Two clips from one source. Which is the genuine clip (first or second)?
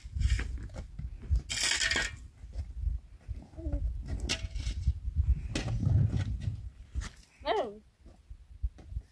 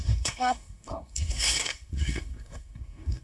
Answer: first